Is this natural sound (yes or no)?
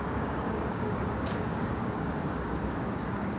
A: no